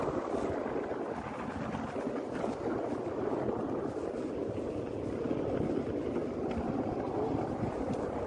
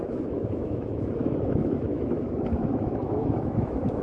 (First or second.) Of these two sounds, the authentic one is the first